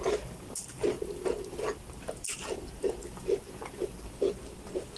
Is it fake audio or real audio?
real